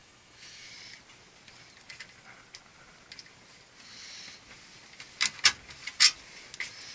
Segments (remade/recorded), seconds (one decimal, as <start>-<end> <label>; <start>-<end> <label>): 0.0-0.7 remade; 0.7-6.9 recorded